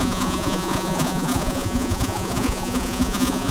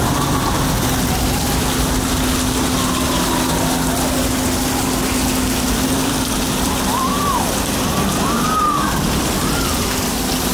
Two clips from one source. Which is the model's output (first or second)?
first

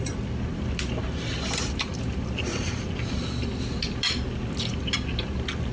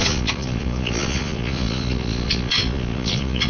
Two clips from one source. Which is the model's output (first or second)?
second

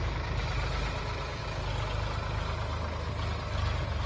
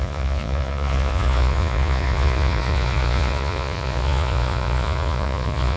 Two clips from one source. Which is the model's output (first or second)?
second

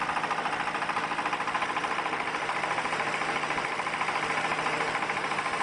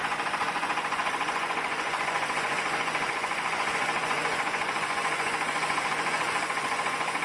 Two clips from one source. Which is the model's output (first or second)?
second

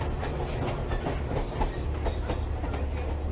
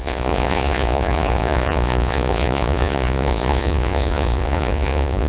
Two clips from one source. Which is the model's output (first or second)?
second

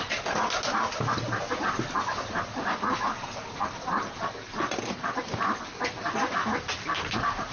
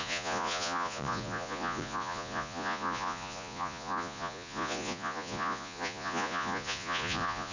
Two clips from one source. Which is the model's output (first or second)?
second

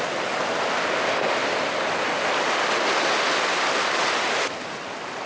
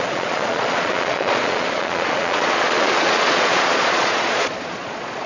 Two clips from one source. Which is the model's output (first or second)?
second